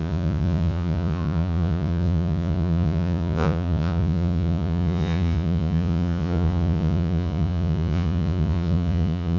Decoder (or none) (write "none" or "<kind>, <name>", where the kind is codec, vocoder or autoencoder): vocoder, Vocos